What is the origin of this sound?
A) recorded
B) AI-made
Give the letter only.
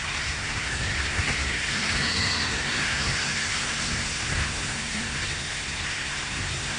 B